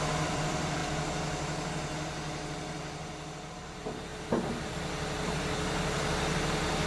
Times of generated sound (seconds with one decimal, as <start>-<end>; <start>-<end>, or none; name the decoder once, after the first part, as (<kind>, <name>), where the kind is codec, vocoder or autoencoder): 0.0-0.8 (vocoder, BigVGAN v2); 3.5-4.1; 4.7-6.9

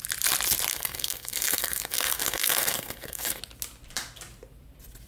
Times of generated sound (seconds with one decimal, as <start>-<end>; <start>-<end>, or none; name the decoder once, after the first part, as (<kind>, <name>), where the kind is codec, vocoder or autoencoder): 0.7-3.4 (codec, SNAC)

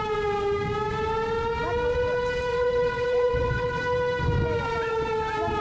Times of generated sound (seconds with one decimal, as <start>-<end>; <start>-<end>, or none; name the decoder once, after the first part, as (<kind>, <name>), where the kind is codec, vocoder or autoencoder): 2.5-3.8 (vocoder, WaveNeXt)

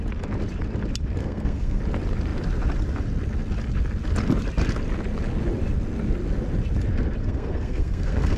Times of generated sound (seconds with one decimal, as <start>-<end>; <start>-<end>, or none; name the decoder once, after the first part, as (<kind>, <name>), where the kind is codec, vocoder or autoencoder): 1.2-1.8 (codec, SNAC); 7.2-8.4

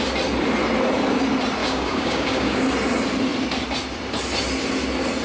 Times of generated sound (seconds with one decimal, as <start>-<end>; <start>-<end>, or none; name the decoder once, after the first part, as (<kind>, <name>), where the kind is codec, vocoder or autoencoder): 1.6-2.6 (codec, DAC)

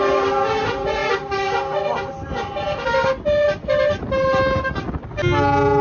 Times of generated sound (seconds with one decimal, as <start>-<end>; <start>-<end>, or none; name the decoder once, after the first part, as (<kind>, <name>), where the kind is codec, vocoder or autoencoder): none